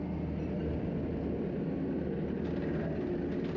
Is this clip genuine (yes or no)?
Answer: yes